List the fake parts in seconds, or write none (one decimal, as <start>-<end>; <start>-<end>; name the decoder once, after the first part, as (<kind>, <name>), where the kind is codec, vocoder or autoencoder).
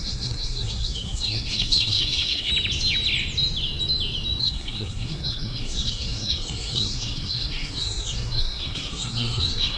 0.0-2.5 (codec, SNAC); 4.4-9.8